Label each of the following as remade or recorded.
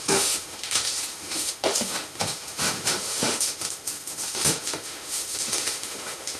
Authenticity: remade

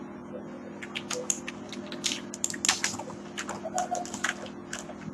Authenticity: recorded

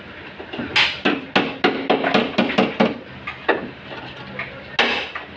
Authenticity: recorded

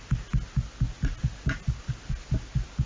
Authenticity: recorded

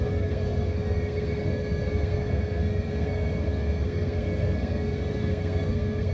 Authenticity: remade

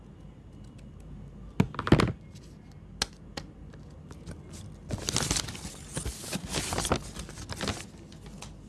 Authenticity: recorded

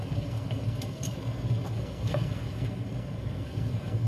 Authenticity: remade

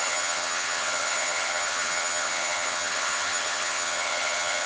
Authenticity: remade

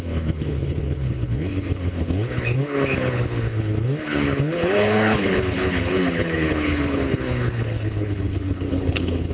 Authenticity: remade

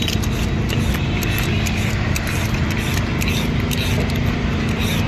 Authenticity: recorded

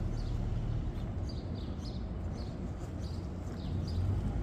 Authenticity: recorded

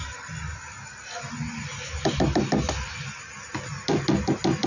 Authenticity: recorded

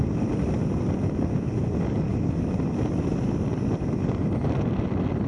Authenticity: recorded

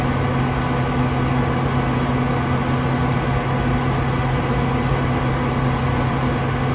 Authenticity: recorded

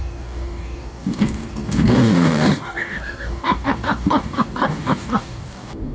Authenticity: remade